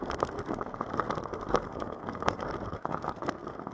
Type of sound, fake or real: fake